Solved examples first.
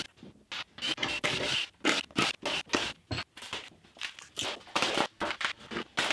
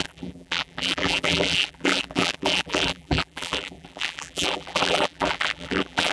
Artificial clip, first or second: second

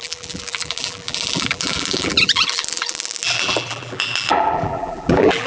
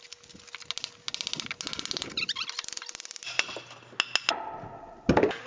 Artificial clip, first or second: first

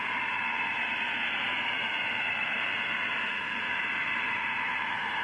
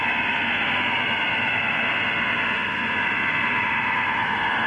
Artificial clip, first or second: first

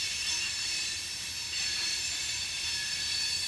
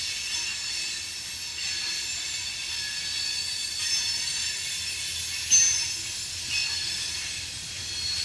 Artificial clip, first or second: first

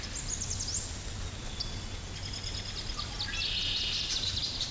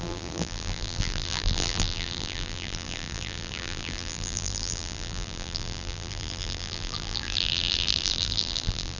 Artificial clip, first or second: second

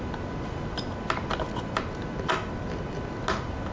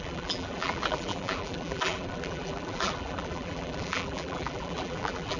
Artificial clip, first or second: second